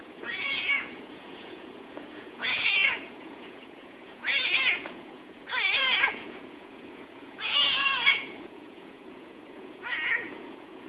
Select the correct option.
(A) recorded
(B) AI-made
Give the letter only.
B